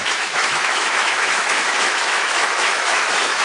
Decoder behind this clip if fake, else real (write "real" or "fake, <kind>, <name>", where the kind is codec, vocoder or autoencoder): fake, autoencoder, DAC-VAE